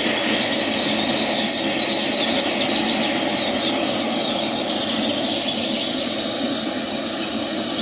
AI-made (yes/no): no